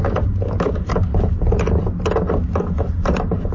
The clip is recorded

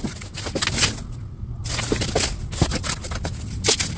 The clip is recorded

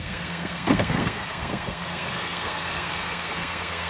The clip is remade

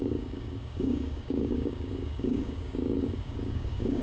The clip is remade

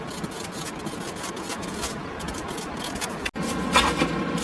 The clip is recorded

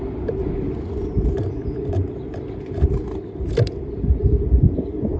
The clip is recorded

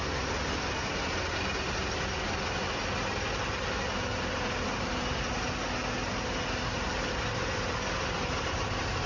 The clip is recorded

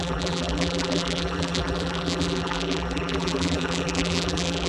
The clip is remade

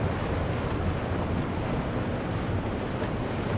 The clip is recorded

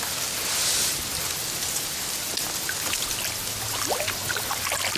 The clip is recorded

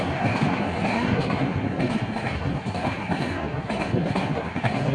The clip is remade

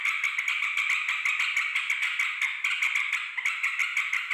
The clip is recorded